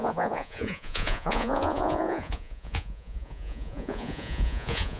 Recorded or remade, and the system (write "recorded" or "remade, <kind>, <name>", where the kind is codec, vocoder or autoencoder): remade, vocoder, Vocos